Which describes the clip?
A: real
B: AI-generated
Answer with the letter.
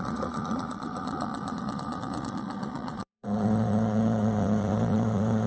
B